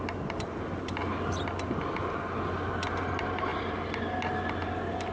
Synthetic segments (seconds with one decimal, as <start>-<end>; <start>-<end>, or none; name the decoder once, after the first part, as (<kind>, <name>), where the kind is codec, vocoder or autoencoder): none

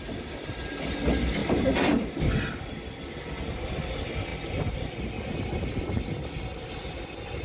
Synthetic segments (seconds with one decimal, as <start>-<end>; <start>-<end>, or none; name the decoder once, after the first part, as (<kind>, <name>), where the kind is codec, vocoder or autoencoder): 1.4-2.2 (vocoder, BigVGAN v2)